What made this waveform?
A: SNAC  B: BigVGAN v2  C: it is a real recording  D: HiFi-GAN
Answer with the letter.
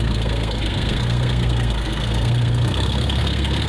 A